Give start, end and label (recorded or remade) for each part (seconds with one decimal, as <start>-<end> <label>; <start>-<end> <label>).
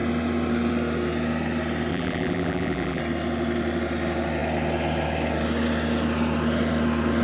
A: 0.0-1.9 recorded; 1.9-3.0 remade; 3.0-7.2 recorded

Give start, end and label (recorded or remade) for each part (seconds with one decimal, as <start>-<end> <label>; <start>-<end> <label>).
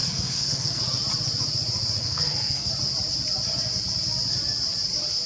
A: 0.0-0.8 remade; 0.8-2.0 recorded; 2.0-2.7 remade; 2.7-5.3 recorded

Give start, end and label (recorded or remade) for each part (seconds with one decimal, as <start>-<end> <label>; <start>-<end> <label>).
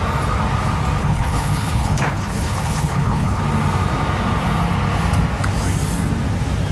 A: 0.0-1.0 recorded; 1.0-3.4 remade; 3.4-6.7 recorded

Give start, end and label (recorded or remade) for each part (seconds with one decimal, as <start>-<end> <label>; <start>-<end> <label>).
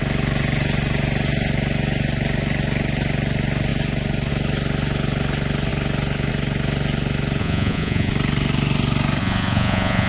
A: 0.0-7.4 recorded; 7.4-8.1 remade; 8.1-9.2 recorded; 9.2-10.1 remade